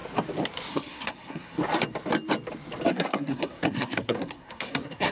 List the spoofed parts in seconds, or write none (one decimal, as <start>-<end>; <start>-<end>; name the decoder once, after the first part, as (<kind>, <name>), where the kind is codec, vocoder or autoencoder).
0.7-1.6 (codec, SNAC); 2.9-5.1